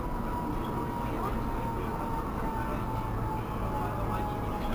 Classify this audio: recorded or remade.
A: recorded